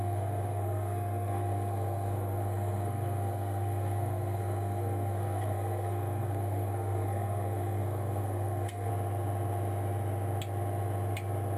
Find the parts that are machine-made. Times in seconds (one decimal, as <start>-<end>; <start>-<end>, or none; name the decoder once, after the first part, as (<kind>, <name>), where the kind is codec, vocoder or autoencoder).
0.0-8.9 (codec, SNAC)